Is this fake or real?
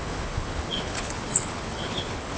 fake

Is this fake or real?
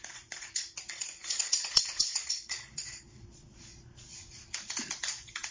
fake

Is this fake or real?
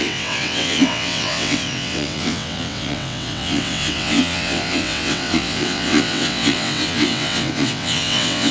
fake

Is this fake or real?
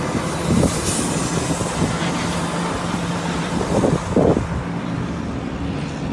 real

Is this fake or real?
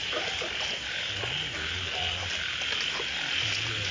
real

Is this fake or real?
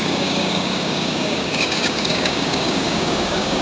fake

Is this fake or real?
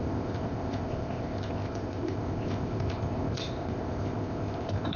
fake